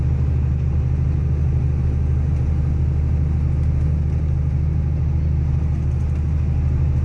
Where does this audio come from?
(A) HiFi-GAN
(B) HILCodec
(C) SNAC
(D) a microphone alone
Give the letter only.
D